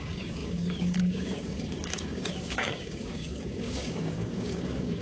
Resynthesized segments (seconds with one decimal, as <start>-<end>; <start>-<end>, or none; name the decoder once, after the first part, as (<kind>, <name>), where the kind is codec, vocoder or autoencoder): 0.0-5.0 (codec, DAC)